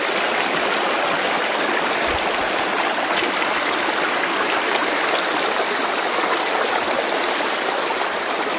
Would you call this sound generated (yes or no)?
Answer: no